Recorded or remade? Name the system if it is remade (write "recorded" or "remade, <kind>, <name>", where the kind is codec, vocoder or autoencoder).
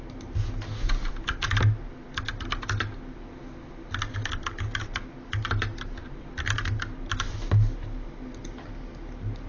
recorded